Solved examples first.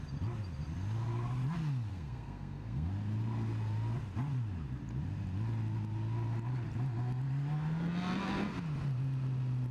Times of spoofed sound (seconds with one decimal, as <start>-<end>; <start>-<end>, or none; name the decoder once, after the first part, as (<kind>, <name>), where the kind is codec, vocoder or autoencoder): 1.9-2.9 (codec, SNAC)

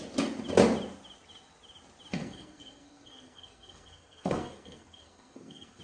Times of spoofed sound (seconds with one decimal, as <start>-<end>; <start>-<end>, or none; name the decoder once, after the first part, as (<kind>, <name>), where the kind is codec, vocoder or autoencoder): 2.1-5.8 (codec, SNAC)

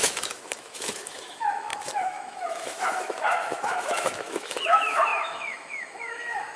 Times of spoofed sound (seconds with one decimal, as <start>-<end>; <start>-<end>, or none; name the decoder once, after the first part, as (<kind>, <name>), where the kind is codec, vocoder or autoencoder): 0.0-6.6 (autoencoder, DAC-VAE)

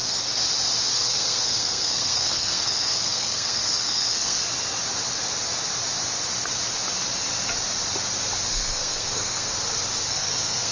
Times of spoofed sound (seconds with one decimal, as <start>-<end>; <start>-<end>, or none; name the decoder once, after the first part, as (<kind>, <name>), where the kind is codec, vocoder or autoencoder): 0.9-4.4 (codec, SNAC); 8.5-9.5; 10.1-10.7

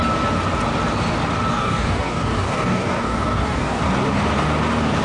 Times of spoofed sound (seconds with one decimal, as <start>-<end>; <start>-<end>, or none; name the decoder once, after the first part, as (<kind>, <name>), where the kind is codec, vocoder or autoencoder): 1.5-3.8 (codec, DAC)

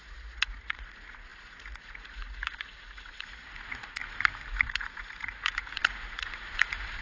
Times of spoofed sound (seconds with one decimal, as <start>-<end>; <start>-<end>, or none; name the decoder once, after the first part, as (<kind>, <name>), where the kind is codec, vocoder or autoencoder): 0.0-4.0 (vocoder, Vocos); 4.6-7.0

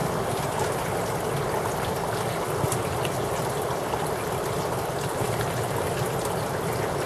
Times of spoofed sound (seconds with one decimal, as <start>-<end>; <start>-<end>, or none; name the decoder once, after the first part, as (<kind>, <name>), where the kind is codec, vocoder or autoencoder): none